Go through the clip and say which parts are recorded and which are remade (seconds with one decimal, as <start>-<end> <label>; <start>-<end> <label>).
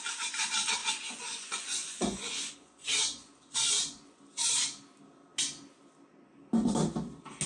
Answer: 0.0-0.8 recorded; 0.8-4.2 remade; 4.2-7.5 recorded